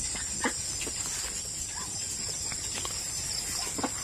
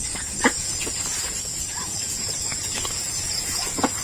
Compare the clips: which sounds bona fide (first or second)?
first